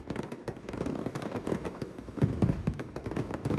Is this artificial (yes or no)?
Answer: yes